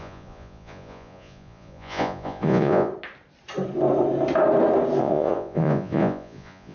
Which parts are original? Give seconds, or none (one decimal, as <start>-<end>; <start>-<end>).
2.9-5.0